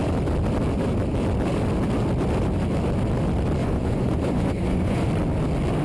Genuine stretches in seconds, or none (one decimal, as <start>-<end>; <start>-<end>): 0.0-3.6; 5.1-5.8

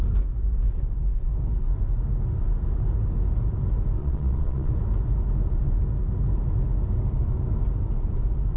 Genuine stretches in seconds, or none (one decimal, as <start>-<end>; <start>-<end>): 0.0-4.0; 4.7-8.6

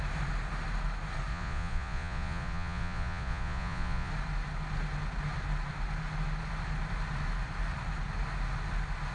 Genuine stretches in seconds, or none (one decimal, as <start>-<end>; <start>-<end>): 0.0-1.3; 4.1-9.1

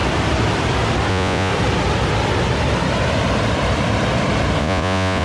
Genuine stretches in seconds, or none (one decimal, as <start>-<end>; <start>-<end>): 0.0-1.1; 1.5-4.6

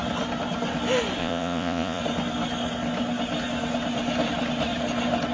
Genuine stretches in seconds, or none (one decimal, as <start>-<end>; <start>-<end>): 0.0-1.2; 2.0-5.3

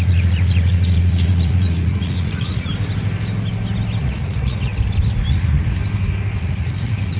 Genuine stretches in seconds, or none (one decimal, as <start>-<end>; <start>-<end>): 2.7-4.0; 4.7-5.3; 5.8-6.4

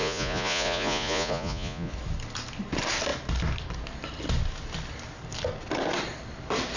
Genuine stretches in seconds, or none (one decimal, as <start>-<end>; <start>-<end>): 1.9-6.8